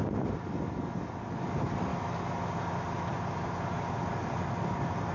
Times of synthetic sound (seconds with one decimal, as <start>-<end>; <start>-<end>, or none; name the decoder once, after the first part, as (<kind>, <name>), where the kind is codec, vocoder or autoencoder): 1.9-2.5 (autoencoder, DAC-VAE)